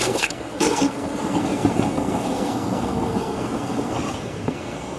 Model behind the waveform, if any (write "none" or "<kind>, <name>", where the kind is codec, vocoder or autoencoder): codec, SNAC